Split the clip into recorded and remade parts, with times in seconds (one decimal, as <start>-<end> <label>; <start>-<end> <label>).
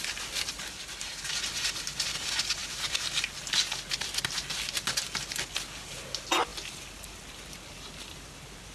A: 0.0-8.7 recorded